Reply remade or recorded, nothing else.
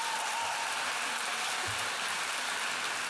recorded